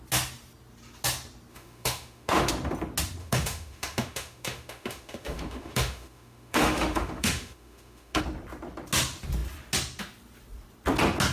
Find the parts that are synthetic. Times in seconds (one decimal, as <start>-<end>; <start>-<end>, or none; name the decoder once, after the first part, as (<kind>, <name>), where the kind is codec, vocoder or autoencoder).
1.5-2.5 (autoencoder, DAC-VAE); 3.2-8.2